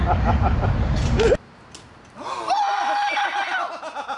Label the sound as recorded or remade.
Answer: recorded